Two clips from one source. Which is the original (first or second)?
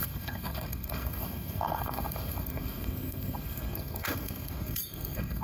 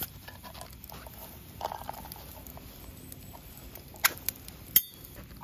second